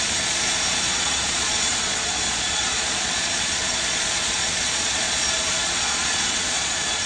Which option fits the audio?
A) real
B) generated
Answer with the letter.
B